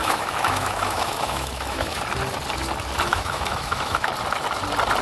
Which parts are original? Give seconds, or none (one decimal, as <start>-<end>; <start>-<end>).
2.0-3.1; 4.1-5.0

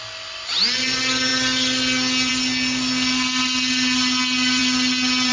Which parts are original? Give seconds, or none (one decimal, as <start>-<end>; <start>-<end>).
0.0-5.3